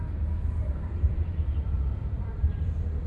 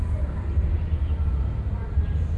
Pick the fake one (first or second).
first